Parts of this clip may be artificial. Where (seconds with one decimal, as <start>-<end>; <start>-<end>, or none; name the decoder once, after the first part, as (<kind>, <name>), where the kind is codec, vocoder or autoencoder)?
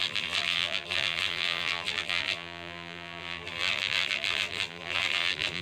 0.0-5.6 (vocoder, BigVGAN v2)